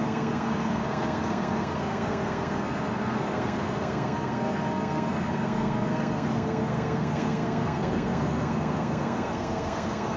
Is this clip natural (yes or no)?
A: no